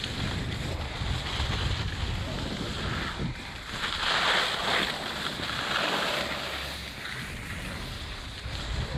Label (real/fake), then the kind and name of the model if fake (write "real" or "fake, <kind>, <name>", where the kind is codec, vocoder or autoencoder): real